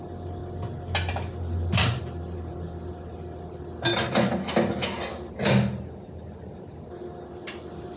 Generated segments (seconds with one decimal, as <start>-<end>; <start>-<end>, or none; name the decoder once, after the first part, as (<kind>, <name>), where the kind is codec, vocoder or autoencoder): none

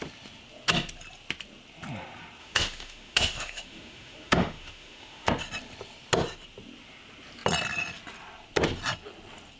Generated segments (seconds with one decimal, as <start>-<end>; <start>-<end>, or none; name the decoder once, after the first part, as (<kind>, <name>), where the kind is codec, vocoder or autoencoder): 2.4-5.3 (autoencoder, DAC-VAE)

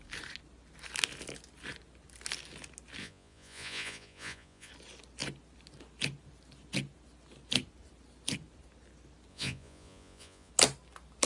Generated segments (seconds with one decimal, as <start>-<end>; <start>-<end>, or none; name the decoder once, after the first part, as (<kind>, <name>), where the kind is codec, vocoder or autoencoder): 3.0-4.7 (vocoder, Vocos); 9.3-10.5

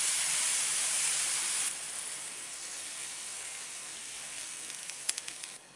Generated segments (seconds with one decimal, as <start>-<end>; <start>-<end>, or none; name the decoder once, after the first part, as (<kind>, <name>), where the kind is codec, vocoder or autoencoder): 2.2-5.8 (codec, SNAC)

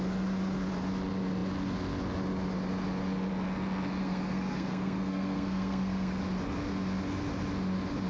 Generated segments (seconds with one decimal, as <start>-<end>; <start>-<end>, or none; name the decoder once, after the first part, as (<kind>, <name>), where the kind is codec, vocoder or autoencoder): 4.0-6.2 (codec, SNAC)

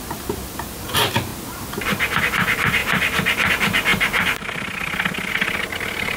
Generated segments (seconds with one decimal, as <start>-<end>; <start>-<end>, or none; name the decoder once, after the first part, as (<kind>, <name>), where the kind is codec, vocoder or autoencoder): 0.0-1.3 (vocoder, BigVGAN v2); 2.2-2.8; 3.5-3.9; 5.3-6.2